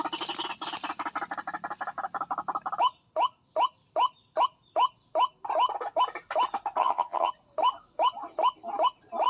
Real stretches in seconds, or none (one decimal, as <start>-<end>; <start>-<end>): 0.0-6.8; 7.3-9.3